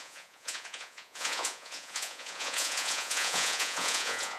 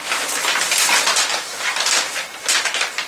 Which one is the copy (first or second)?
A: first